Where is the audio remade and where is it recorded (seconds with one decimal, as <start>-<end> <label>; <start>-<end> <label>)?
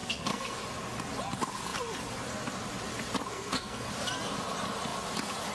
0.0-0.6 remade; 0.6-3.3 recorded; 3.3-3.9 remade; 3.9-5.5 recorded